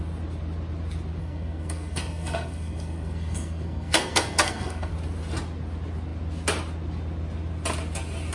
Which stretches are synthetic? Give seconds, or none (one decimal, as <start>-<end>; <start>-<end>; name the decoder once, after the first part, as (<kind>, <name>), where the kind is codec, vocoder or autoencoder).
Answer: 1.2-4.9 (codec, SNAC)